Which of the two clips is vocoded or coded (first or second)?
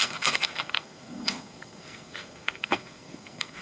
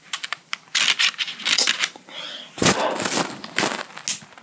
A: first